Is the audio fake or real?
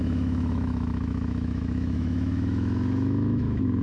fake